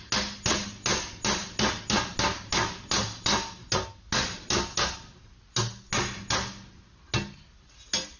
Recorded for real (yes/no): yes